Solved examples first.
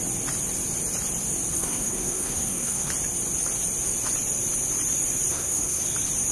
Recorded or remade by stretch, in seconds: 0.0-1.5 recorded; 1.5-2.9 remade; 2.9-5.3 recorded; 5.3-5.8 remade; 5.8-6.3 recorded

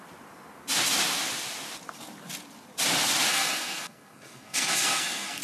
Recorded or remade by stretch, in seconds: 0.0-3.3 recorded; 3.3-5.4 remade

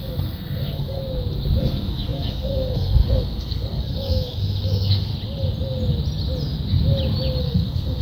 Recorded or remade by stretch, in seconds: 0.0-1.0 remade; 1.0-1.6 recorded; 1.6-5.1 remade; 5.1-7.4 recorded; 7.4-8.0 remade

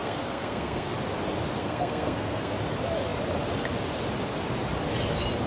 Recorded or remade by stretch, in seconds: 0.0-0.9 remade; 0.9-1.6 recorded; 1.6-2.5 remade; 2.5-5.5 recorded

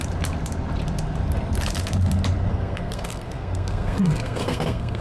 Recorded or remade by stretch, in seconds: 0.0-2.5 recorded; 2.5-5.0 remade

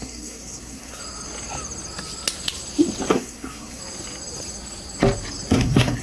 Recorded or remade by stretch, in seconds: 0.0-1.0 remade; 1.0-3.1 recorded; 3.1-3.8 remade; 3.8-5.5 recorded; 5.5-6.0 remade

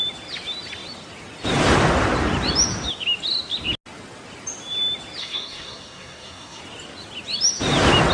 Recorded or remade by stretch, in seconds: 0.0-5.2 recorded; 5.2-6.6 remade; 6.6-8.1 recorded